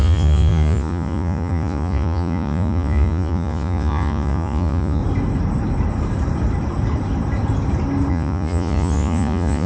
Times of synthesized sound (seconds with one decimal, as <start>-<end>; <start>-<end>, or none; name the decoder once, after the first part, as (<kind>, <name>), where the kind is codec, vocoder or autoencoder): 0.0-5.0 (vocoder, Vocos); 8.1-9.7